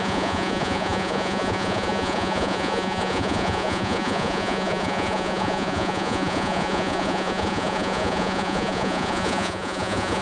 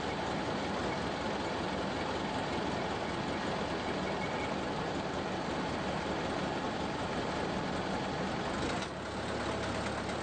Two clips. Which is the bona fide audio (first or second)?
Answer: second